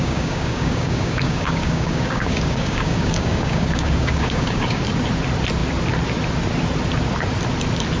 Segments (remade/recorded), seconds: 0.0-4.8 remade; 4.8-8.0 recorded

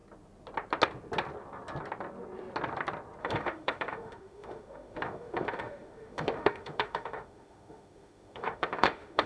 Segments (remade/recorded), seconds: 0.0-3.2 recorded; 3.2-9.3 remade